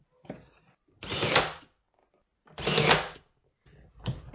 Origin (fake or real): real